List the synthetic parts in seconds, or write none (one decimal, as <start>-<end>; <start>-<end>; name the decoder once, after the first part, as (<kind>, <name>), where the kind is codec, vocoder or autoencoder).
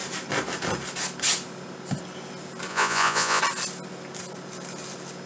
2.7-3.4 (vocoder, Vocos)